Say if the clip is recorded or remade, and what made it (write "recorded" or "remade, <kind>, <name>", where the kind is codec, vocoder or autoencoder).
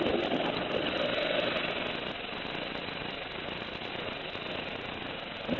recorded